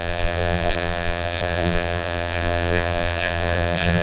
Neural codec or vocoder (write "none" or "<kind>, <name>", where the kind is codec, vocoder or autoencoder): vocoder, BigVGAN v2